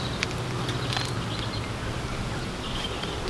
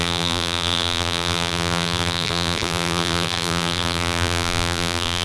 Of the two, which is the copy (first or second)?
second